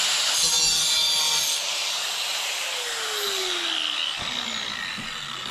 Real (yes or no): yes